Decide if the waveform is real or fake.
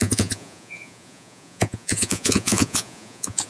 fake